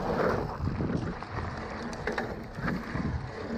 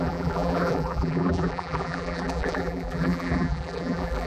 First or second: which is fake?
second